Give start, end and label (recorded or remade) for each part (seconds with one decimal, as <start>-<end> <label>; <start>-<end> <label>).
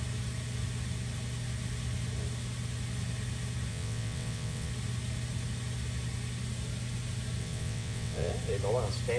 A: 0.0-3.7 recorded; 3.7-4.7 remade; 4.7-7.4 recorded; 7.4-8.3 remade; 8.3-9.2 recorded